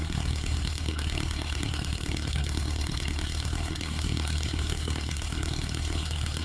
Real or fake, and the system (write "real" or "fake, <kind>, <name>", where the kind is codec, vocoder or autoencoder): fake, codec, SNAC